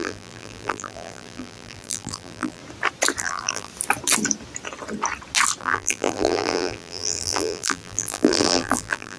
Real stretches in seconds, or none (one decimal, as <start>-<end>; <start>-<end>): 2.6-3.2; 3.7-5.6